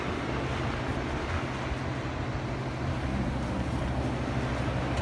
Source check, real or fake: real